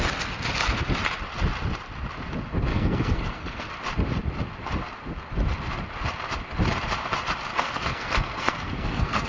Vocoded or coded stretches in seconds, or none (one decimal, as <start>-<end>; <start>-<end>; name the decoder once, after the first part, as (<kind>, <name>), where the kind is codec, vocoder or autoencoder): 2.7-3.7 (codec, SNAC); 7.5-9.3